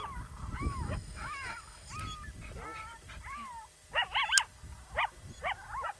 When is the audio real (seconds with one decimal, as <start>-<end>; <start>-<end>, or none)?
0.0-0.6; 1.9-6.0